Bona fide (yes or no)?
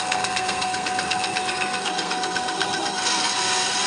no